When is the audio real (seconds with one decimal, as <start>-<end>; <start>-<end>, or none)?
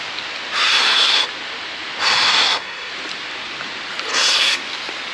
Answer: 0.0-0.7; 1.2-2.3; 2.9-4.1; 4.6-5.1